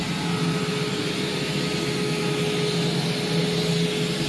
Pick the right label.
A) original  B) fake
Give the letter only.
A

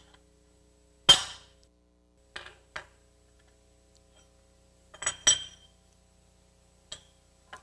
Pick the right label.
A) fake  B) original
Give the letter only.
B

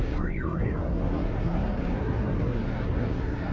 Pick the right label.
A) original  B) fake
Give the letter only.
B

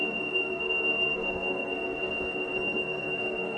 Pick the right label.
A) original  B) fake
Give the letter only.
B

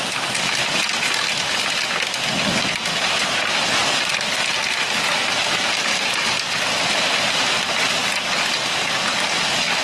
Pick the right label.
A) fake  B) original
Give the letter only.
B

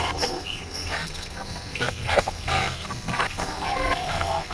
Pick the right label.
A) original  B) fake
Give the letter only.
B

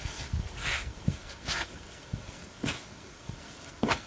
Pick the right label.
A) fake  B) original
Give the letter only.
A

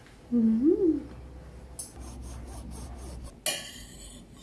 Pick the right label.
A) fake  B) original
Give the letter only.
B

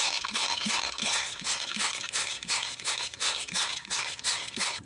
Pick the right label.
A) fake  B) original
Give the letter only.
A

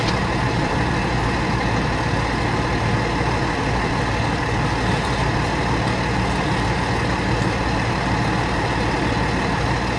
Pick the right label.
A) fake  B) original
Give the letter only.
B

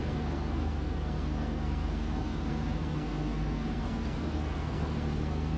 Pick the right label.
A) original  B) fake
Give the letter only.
B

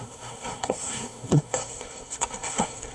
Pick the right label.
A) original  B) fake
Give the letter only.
B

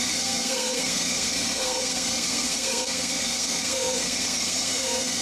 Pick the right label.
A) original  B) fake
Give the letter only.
B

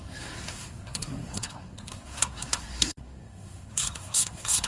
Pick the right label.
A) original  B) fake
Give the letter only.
B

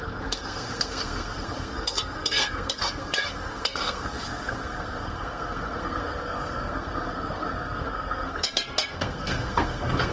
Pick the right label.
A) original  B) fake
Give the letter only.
B